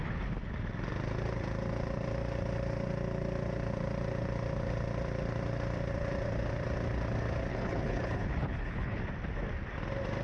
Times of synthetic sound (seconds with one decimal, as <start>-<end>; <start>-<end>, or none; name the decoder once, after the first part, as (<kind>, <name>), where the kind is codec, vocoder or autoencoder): 7.5-9.0 (codec, HILCodec)